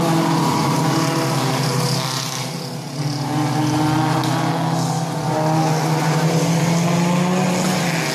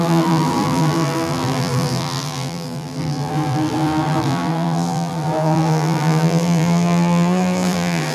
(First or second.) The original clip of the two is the first